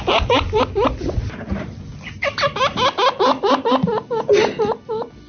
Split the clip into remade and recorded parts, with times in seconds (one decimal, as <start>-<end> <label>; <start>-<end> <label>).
0.0-5.3 recorded